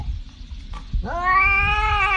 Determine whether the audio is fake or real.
real